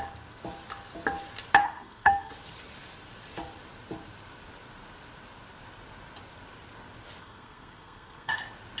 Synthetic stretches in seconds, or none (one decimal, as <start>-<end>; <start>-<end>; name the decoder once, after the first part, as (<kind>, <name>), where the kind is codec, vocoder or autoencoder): 1.6-2.3 (codec, SNAC); 7.2-8.4